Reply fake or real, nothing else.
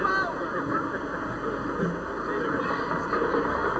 real